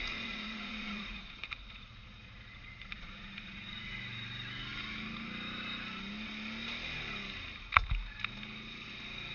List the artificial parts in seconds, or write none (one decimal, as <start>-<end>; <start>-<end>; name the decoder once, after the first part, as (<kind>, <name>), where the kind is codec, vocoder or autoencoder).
0.0-3.9 (vocoder, Vocos)